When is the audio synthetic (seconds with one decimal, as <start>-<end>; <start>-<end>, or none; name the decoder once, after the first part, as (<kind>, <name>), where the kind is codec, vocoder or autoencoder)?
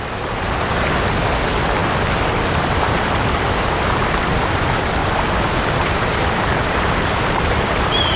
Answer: 1.8-4.2 (vocoder, BigVGAN v2); 5.0-8.2